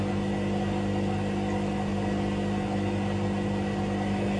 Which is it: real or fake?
real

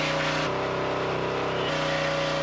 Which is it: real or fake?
real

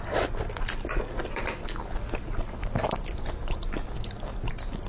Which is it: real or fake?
real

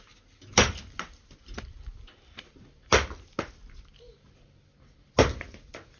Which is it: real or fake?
real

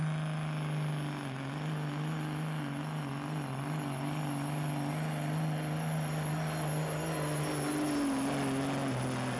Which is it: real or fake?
real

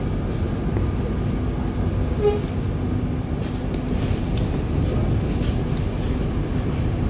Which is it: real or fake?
real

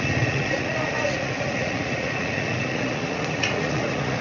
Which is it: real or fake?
fake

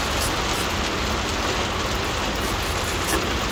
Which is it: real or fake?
real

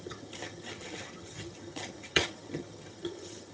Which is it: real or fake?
fake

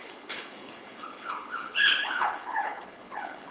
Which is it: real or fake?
fake